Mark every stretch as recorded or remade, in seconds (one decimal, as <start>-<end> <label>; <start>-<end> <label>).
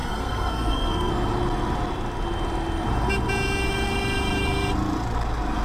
0.0-1.1 remade; 1.1-5.6 recorded